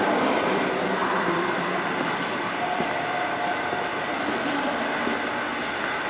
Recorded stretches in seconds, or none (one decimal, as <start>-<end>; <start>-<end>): 0.0-1.0; 4.7-6.1

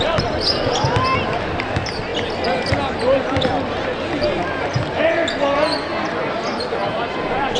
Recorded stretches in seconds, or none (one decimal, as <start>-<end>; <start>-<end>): 0.0-2.1; 2.7-4.4; 5.1-6.8

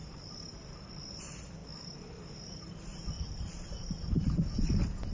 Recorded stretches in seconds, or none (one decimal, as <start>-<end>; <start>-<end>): 0.0-2.9; 3.9-5.1